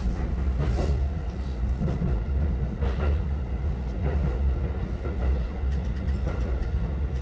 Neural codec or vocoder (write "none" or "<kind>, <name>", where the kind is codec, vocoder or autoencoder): vocoder, Vocos